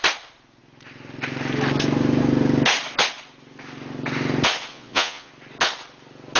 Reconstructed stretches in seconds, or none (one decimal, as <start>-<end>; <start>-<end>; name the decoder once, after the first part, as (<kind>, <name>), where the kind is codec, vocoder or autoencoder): 4.7-5.3 (vocoder, Vocos)